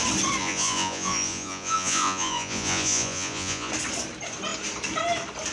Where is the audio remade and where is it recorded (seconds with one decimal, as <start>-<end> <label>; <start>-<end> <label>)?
0.0-0.4 recorded; 0.4-3.7 remade; 3.7-5.5 recorded